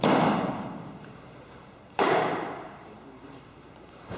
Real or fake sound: fake